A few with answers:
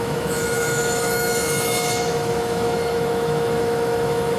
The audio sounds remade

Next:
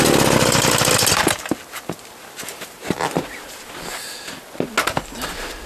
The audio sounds recorded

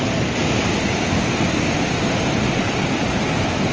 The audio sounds recorded